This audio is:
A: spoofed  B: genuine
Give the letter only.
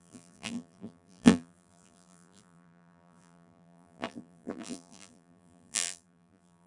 A